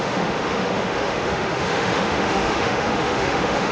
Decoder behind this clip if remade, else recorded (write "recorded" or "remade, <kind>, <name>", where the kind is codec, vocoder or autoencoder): remade, autoencoder, DAC-VAE